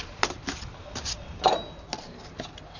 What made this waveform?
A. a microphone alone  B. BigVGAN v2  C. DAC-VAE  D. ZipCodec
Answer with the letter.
A